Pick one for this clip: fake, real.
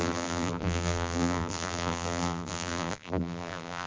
fake